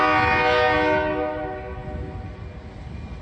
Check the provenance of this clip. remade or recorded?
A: recorded